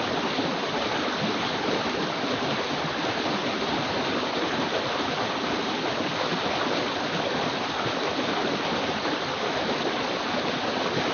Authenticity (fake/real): real